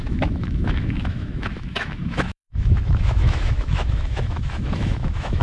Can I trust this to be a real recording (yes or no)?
no